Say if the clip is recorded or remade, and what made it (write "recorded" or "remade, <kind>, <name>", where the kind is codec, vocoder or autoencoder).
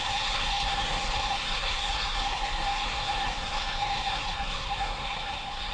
remade, codec, SNAC